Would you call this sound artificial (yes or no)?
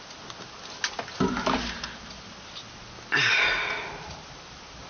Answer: no